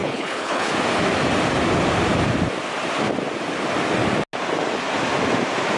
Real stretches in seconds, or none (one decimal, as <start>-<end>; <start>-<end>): 0.7-5.8